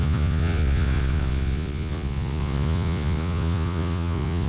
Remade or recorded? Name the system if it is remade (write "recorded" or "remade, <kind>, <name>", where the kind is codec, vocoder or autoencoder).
remade, vocoder, Vocos